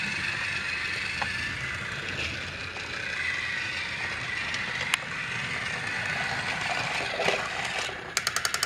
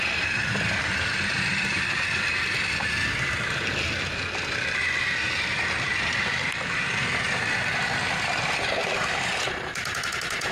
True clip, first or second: first